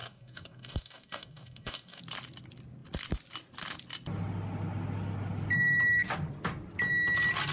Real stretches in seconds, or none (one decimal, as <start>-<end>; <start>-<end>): 2.0-7.5